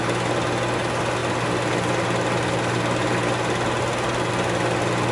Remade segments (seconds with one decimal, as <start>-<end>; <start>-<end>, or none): none